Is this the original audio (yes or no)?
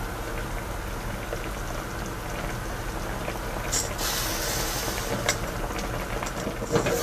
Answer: yes